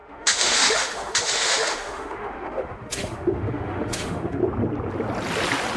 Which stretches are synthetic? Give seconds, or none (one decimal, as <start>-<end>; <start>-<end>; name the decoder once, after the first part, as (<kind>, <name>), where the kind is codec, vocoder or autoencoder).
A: 0.0-4.4 (autoencoder, DAC-VAE)